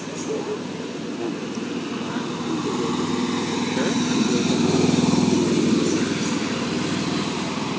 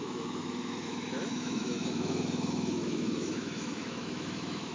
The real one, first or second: first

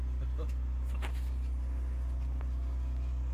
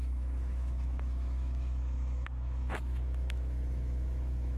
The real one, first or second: first